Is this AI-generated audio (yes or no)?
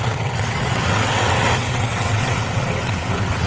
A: yes